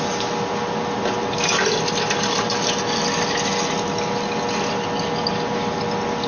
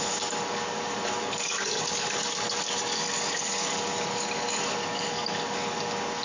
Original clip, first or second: first